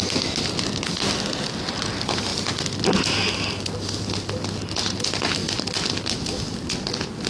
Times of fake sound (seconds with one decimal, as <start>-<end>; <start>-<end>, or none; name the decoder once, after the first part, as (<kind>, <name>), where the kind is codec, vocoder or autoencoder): none